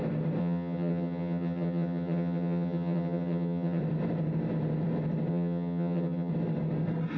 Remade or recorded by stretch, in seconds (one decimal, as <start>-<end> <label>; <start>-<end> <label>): 0.0-0.4 recorded; 0.4-3.8 remade; 3.8-5.3 recorded; 5.3-6.3 remade; 6.3-7.2 recorded